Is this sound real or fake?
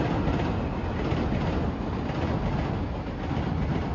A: real